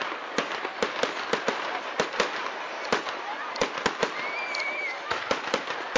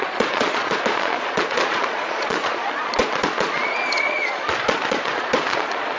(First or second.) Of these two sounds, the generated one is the second